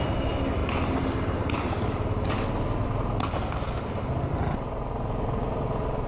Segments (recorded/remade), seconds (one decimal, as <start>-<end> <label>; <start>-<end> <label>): 0.0-6.1 recorded